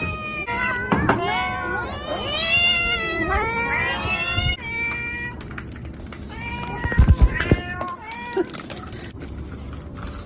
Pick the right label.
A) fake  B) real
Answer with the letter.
B